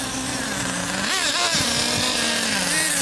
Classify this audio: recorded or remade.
recorded